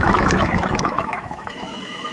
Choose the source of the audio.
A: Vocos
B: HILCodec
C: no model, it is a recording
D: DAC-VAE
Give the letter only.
D